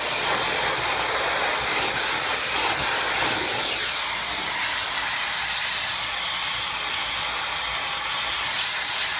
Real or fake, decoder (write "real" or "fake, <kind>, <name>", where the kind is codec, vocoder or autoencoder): real